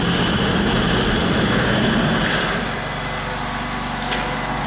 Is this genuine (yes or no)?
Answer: yes